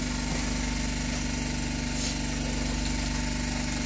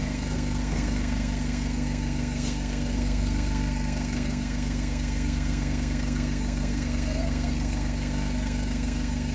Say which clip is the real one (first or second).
first